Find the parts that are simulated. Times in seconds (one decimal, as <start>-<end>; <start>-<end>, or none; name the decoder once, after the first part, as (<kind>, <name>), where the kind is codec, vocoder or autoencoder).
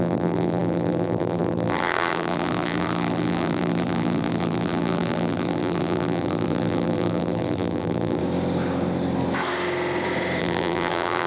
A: 0.0-8.2 (vocoder, BigVGAN v2); 10.4-11.3